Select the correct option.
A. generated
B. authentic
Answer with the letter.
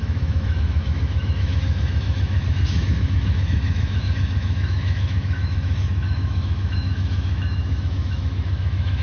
A